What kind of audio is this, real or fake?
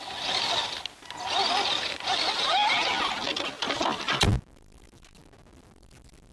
real